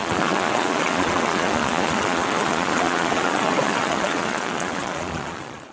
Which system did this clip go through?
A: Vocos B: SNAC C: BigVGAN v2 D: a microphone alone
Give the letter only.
A